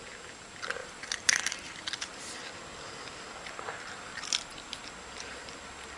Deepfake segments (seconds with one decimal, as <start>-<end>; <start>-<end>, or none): 0.8-2.4